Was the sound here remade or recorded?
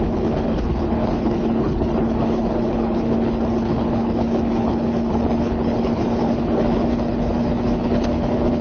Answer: remade